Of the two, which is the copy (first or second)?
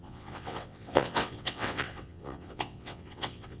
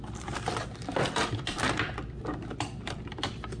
first